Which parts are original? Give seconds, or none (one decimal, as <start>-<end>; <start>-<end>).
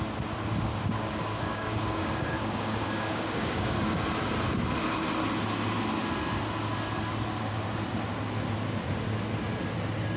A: 0.0-0.7; 3.8-10.2